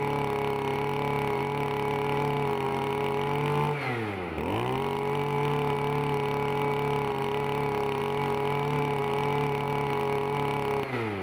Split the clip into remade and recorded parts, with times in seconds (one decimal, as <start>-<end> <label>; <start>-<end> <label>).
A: 0.0-11.2 recorded